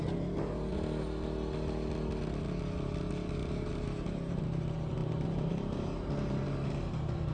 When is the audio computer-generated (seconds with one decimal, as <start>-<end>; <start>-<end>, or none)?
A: 3.4-4.4; 5.0-7.3